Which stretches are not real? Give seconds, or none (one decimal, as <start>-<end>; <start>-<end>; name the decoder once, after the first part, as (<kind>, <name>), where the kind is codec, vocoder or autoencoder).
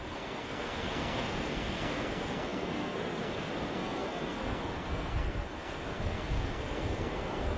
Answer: 0.0-7.6 (codec, SNAC)